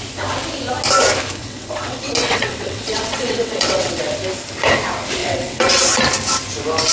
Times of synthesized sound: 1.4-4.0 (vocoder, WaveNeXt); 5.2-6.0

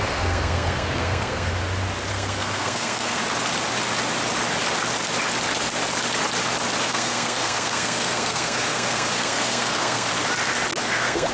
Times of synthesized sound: 0.0-1.5 (codec, SNAC); 2.1-3.2; 6.8-10.1; 10.8-11.3

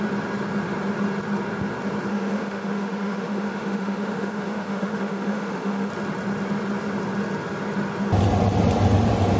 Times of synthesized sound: 2.1-5.9 (autoencoder, DAC-VAE)

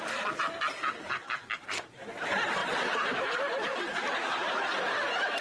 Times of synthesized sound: 0.0-5.4 (vocoder, BigVGAN v2)

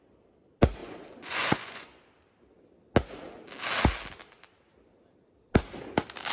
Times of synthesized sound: 0.8-2.0 (vocoder, Vocos)

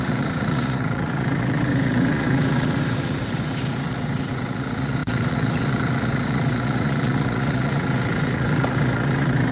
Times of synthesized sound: 0.0-9.5 (vocoder, Vocos)

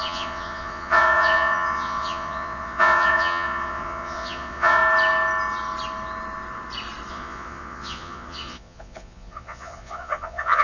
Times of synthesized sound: 0.0-4.8 (vocoder, Vocos); 7.1-10.6

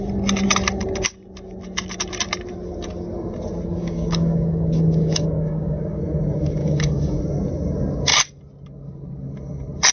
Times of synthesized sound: 3.8-6.0 (codec, DAC); 6.6-7.2